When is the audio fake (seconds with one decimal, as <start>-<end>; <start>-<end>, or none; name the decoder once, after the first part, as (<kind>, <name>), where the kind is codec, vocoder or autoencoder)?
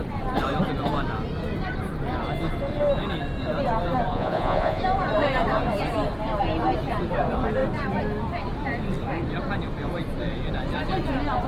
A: 4.1-4.8 (vocoder, Vocos)